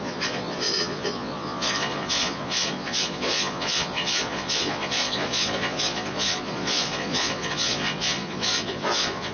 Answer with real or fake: fake